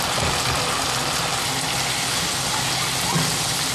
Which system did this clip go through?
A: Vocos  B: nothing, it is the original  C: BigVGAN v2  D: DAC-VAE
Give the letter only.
B